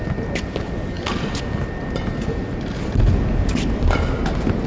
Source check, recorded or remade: recorded